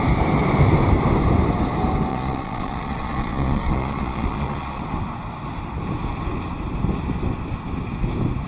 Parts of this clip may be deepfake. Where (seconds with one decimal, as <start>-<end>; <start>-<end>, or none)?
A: 2.1-4.8